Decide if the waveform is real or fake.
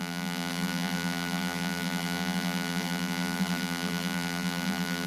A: fake